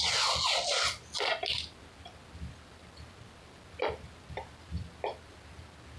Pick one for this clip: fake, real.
real